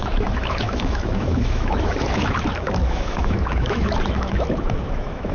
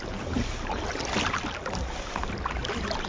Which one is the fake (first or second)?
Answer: first